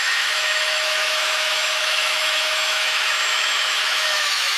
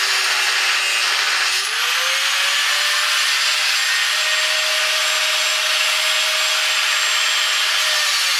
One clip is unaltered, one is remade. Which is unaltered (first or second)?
second